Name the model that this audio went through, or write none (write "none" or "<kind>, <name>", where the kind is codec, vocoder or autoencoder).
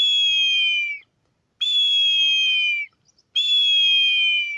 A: none